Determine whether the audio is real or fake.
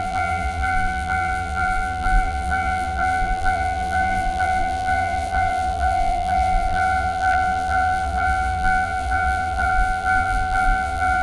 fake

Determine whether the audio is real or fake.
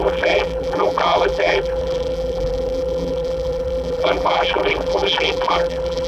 fake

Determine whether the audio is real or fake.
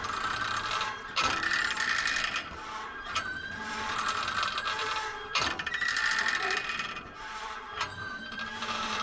fake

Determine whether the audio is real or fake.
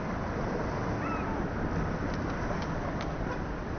real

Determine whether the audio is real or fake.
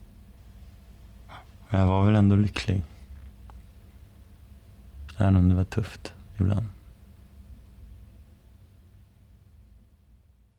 real